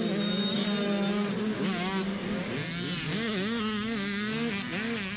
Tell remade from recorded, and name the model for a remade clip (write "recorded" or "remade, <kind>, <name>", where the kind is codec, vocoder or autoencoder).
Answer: recorded